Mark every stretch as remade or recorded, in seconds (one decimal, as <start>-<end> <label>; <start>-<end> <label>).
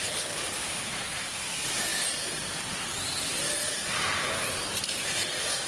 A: 0.0-0.6 recorded; 0.6-1.2 remade; 1.2-5.7 recorded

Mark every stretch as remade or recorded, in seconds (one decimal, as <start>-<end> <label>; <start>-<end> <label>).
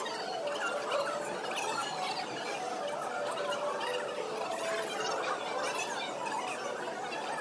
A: 0.0-7.4 recorded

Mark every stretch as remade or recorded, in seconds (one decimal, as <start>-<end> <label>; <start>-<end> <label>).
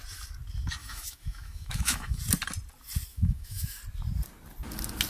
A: 0.0-0.8 recorded; 0.8-2.2 remade; 2.2-3.1 recorded; 3.1-3.8 remade; 3.8-5.1 recorded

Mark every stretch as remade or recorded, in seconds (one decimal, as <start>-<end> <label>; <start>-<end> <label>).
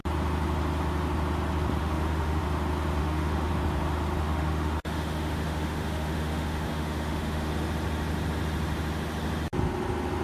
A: 0.0-1.8 recorded; 1.8-2.4 remade; 2.4-3.0 recorded; 3.0-3.5 remade; 3.5-4.2 recorded; 4.2-7.5 remade; 7.5-10.2 recorded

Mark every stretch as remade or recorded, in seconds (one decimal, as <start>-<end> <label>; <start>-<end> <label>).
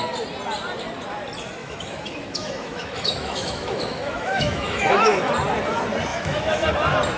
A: 0.0-1.6 recorded; 1.6-5.3 remade; 5.3-6.1 recorded; 6.1-6.7 remade; 6.7-7.2 recorded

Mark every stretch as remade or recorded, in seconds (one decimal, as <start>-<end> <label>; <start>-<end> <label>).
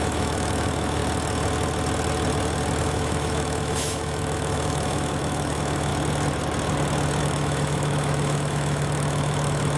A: 0.0-1.0 remade; 1.0-2.8 recorded; 2.8-5.9 remade; 5.9-7.2 recorded; 7.2-9.8 remade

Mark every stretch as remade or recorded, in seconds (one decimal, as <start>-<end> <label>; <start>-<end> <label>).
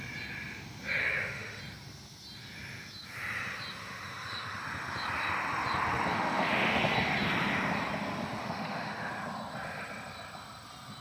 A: 0.0-1.0 recorded; 1.0-1.6 remade; 1.6-3.8 recorded; 3.8-4.6 remade; 4.6-6.1 recorded; 6.1-6.8 remade; 6.8-8.4 recorded; 8.4-9.1 remade; 9.1-11.0 recorded